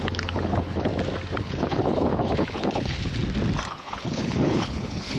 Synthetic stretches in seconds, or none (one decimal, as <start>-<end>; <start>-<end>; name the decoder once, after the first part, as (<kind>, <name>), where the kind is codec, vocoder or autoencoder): 0.0-0.9 (codec, HILCodec); 1.4-3.2; 3.7-5.2

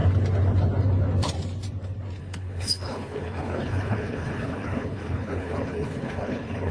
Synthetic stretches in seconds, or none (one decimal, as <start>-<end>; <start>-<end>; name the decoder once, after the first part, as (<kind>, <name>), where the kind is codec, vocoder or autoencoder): 2.2-6.7 (codec, HILCodec)